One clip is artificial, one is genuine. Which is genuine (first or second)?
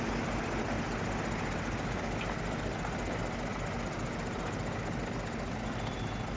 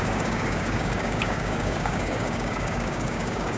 first